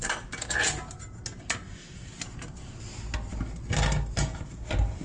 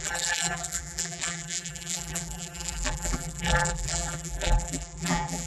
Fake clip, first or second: second